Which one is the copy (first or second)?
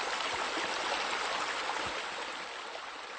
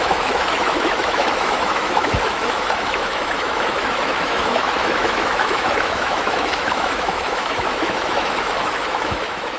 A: second